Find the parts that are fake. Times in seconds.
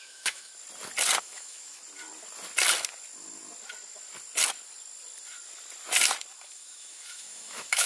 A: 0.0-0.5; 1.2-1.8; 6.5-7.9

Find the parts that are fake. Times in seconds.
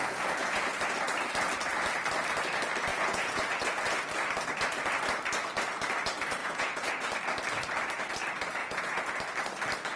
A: 0.0-0.6; 2.9-3.4; 6.4-6.9; 8.6-9.2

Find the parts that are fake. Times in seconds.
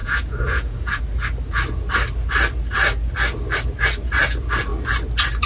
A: 0.0-1.0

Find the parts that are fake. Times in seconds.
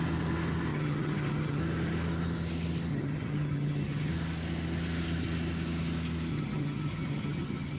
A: 0.7-1.6; 2.9-4.1; 6.3-7.8